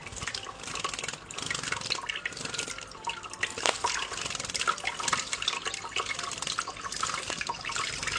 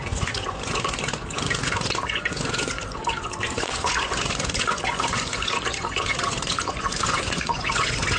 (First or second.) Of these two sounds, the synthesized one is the second